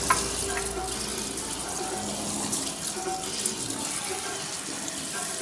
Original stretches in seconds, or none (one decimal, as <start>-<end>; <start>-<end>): 0.0-5.4